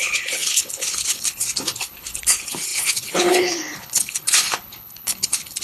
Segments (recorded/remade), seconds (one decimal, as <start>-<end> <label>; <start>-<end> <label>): 0.0-5.6 remade